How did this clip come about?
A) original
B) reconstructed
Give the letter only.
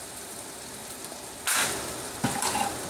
A